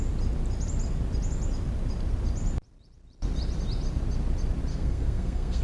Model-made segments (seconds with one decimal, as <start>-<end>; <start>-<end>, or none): 4.7-5.6